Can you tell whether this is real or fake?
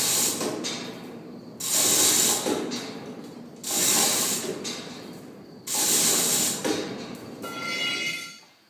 real